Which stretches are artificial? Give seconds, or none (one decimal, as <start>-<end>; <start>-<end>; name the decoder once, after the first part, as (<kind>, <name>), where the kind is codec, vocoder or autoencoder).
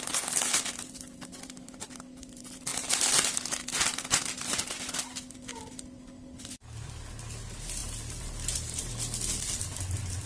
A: 7.8-8.9 (vocoder, BigVGAN v2)